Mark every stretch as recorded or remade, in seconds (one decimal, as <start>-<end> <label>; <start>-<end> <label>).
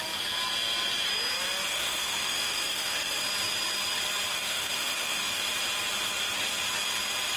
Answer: 0.0-1.7 recorded; 1.7-3.2 remade; 3.2-4.3 recorded; 4.3-5.4 remade; 5.4-7.4 recorded